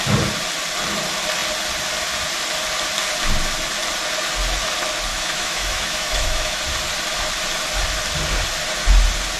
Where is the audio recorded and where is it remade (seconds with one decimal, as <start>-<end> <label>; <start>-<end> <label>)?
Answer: 0.0-5.1 recorded; 5.1-6.6 remade; 6.6-9.4 recorded